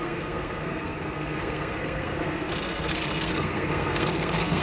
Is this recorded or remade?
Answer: remade